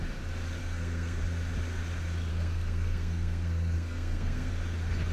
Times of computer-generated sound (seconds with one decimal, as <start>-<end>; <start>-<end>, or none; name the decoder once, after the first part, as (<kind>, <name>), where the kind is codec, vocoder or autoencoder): 0.6-1.2 (codec, SNAC); 2.3-4.5